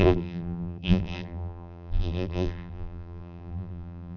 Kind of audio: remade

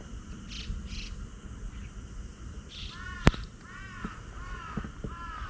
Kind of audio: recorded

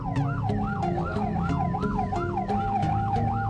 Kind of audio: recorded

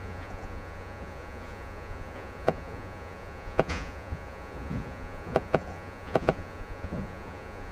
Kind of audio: remade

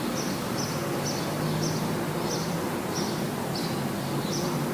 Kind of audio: recorded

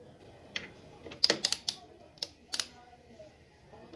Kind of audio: recorded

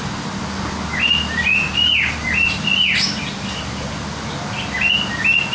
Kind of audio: recorded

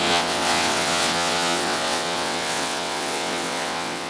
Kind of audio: remade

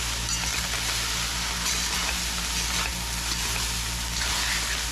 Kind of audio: recorded